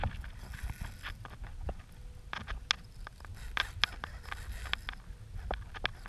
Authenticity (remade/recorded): recorded